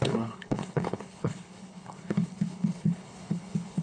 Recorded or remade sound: remade